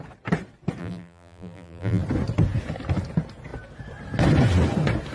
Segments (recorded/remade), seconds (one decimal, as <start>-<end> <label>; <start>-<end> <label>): 0.0-0.8 recorded; 0.8-2.0 remade; 2.0-5.1 recorded